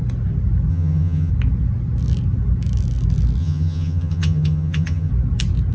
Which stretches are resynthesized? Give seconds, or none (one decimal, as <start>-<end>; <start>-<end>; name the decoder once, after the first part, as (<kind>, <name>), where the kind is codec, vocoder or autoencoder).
0.7-1.3 (vocoder, HiFi-GAN); 3.4-5.1